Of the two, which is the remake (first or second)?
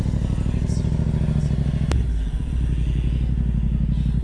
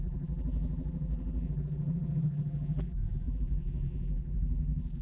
second